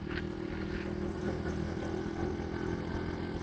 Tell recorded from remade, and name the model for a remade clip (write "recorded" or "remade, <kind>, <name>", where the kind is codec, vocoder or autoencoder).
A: recorded